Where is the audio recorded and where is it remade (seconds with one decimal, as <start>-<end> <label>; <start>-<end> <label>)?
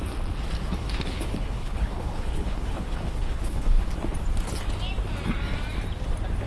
0.0-0.8 recorded; 0.8-3.8 remade; 3.8-6.5 recorded